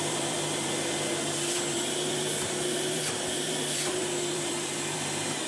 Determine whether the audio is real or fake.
fake